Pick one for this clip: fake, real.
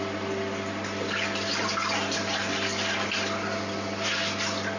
real